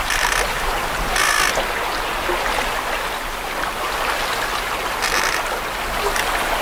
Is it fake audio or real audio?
real